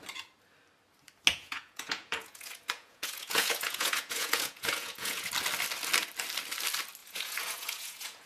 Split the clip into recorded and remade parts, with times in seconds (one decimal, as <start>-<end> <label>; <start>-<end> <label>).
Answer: 0.0-1.3 recorded; 1.3-5.3 remade; 5.3-7.0 recorded; 7.0-8.3 remade